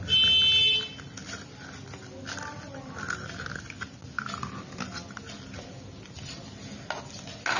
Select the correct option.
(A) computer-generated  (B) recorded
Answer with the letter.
B